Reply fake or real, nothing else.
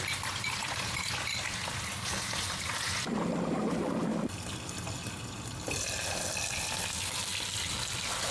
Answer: real